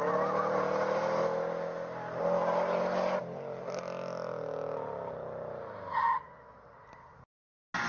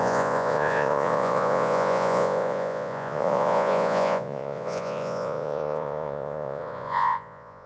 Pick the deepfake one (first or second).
second